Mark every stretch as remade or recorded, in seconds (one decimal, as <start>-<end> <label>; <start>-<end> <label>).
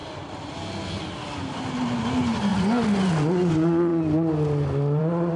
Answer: 0.0-5.4 recorded